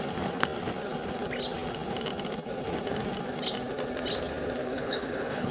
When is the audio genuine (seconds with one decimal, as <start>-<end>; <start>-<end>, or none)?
0.0-4.6